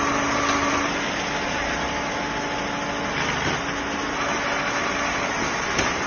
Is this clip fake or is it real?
real